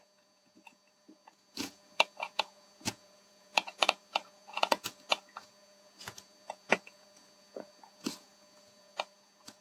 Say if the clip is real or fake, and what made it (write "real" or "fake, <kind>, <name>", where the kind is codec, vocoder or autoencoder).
fake, vocoder, Vocos